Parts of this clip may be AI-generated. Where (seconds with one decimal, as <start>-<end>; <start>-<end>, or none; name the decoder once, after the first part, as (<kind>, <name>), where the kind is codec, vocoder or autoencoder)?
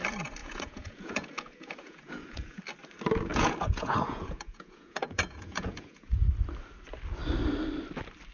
0.4-2.6 (vocoder, Vocos); 3.3-6.1